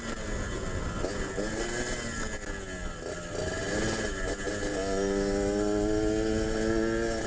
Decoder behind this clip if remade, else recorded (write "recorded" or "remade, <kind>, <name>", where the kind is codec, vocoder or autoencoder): recorded